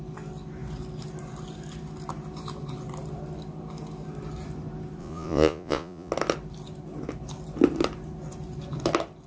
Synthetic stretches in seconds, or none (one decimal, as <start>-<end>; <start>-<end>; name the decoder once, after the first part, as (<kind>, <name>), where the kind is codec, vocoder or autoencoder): 5.0-6.1 (vocoder, Vocos)